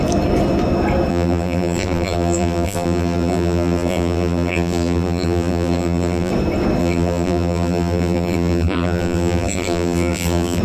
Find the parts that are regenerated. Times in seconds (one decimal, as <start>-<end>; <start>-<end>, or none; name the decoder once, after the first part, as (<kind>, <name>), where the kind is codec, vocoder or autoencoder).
1.1-6.3 (vocoder, BigVGAN v2); 6.8-10.6